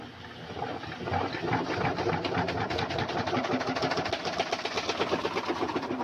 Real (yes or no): yes